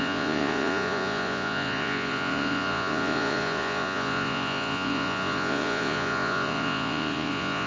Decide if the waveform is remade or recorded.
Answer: remade